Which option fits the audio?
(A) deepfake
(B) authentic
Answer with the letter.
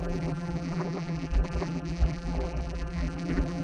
A